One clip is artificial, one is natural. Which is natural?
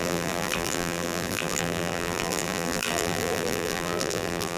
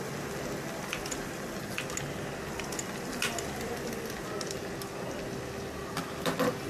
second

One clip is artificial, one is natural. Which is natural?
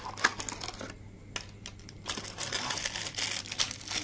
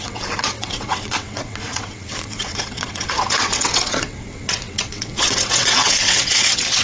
first